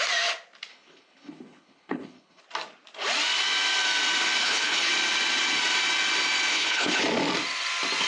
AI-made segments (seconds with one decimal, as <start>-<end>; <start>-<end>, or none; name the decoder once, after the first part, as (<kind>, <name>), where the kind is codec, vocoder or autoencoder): 0.7-2.4 (codec, HILCodec); 4.4-4.9; 6.5-7.0